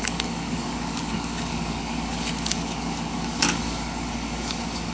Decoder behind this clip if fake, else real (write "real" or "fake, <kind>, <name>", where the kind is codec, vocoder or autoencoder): fake, codec, DAC